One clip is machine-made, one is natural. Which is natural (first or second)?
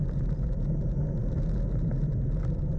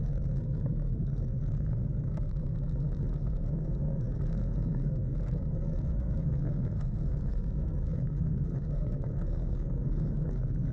first